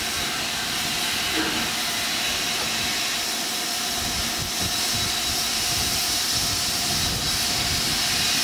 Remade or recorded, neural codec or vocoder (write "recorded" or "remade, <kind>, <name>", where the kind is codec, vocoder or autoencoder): recorded